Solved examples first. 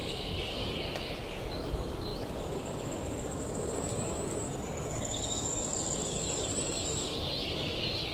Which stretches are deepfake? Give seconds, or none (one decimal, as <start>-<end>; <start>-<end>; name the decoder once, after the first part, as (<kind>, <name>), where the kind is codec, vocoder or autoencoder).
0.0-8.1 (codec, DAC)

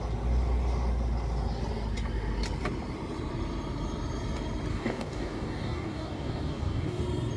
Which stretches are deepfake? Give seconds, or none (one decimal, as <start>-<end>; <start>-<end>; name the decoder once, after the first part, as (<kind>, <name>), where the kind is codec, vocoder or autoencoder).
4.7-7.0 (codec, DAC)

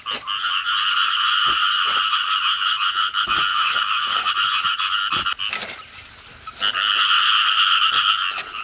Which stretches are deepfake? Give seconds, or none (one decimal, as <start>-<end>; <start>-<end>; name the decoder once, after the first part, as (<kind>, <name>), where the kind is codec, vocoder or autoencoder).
3.5-4.3 (codec, DAC)